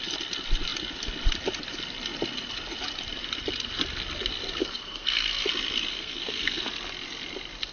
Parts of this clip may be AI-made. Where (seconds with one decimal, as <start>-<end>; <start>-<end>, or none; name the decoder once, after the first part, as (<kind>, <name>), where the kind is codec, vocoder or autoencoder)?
4.6-5.5 (codec, SNAC); 5.9-6.7